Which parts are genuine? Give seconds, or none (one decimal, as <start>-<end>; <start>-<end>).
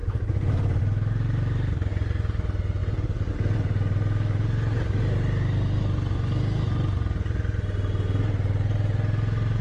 0.8-9.6